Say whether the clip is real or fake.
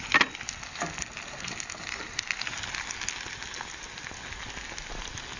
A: real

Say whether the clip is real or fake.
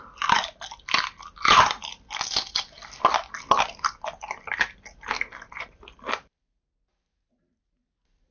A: real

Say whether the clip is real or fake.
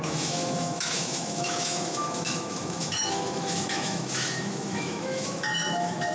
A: fake